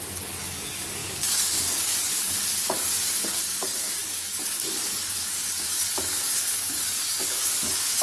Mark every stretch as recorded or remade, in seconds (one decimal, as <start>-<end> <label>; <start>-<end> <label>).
0.0-8.0 remade